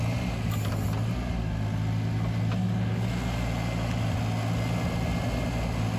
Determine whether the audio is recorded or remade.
recorded